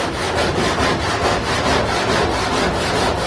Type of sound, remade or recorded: recorded